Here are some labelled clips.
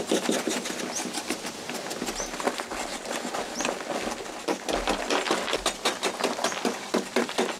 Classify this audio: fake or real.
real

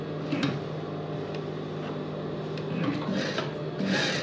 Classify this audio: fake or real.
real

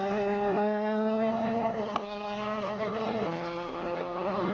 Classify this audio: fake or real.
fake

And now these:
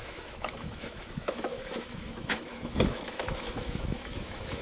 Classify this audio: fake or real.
fake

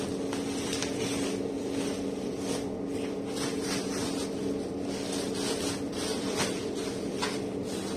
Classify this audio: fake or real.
real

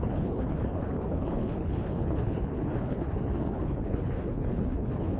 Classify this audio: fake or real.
fake